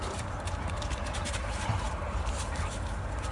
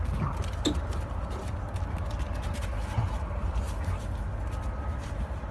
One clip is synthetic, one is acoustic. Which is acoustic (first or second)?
second